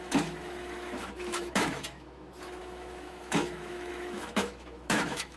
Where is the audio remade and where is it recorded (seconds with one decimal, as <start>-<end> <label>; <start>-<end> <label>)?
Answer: 0.0-5.4 remade